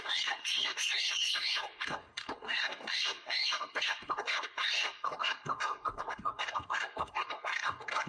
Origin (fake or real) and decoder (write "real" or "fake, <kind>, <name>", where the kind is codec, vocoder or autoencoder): fake, codec, SNAC